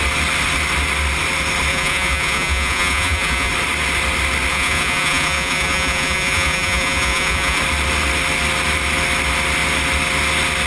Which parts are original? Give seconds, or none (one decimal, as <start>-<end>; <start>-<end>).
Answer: 0.0-1.7; 3.5-4.5; 7.6-10.7